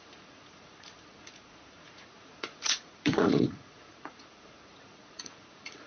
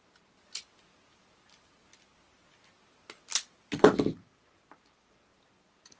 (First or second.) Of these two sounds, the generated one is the first